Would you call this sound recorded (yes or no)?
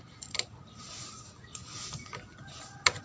yes